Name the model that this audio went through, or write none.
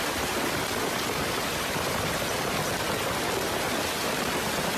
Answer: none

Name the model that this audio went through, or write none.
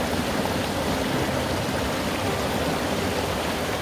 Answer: none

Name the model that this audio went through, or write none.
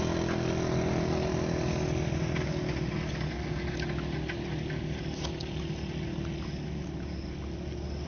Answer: none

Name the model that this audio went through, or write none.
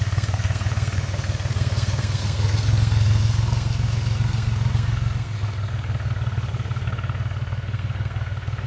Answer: codec, SNAC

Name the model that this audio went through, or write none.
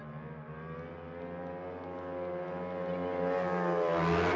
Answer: none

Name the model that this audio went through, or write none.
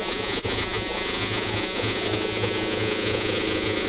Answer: vocoder, Vocos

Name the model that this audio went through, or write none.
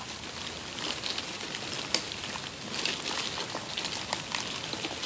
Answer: none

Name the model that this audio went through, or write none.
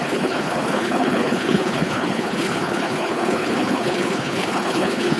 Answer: codec, HILCodec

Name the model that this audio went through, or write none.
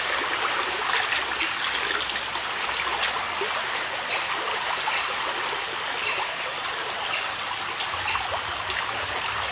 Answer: none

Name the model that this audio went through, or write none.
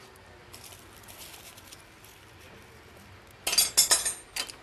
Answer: none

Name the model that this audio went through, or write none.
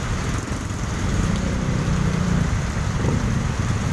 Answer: vocoder, BigVGAN v2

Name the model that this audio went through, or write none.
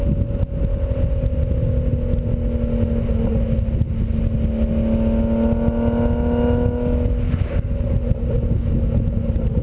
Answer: none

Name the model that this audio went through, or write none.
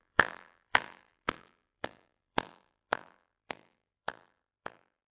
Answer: vocoder, BigVGAN v2